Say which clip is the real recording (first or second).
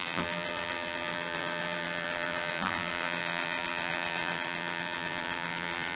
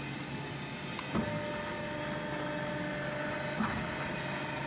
second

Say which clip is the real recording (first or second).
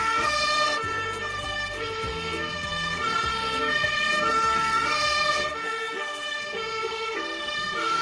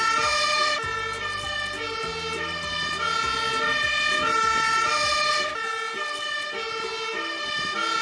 second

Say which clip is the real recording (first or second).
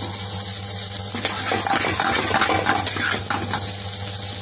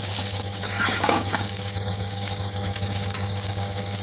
first